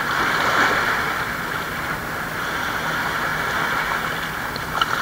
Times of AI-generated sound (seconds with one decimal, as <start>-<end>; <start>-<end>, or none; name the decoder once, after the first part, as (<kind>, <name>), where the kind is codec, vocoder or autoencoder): none